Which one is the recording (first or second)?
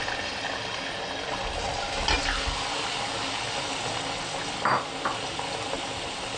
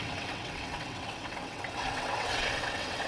first